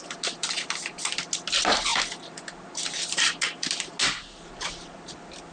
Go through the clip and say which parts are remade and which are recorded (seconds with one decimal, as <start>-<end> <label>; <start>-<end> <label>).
0.0-5.5 recorded